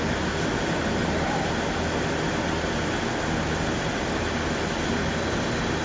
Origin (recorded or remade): recorded